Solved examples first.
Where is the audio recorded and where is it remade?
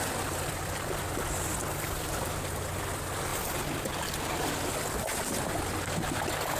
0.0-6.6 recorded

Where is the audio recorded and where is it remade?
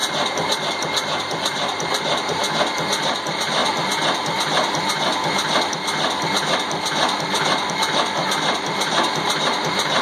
0.0-0.7 recorded; 0.7-2.4 remade; 2.4-3.1 recorded; 3.1-3.6 remade; 3.6-7.7 recorded; 7.7-10.0 remade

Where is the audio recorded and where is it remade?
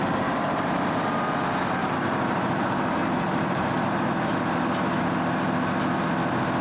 0.0-0.9 remade; 0.9-1.8 recorded; 1.8-4.3 remade; 4.3-6.6 recorded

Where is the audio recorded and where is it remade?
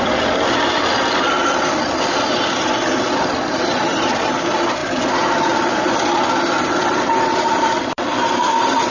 0.0-4.8 remade; 4.8-6.4 recorded; 6.4-8.9 remade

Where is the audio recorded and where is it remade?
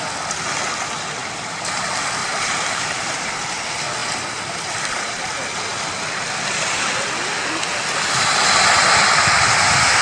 0.0-2.2 recorded; 2.2-3.6 remade; 3.6-4.0 recorded; 4.0-5.3 remade; 5.3-10.0 recorded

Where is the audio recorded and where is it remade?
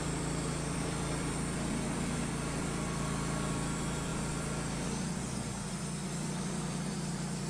0.0-7.5 remade